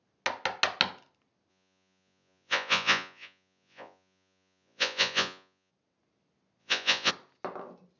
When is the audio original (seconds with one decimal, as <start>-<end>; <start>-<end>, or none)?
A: 0.0-1.5; 5.7-6.6; 7.1-8.0